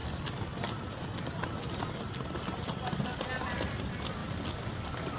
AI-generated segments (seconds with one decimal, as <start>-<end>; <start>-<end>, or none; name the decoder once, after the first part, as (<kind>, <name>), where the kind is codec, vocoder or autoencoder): none